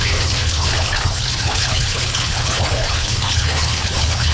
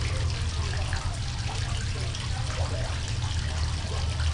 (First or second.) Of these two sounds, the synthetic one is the first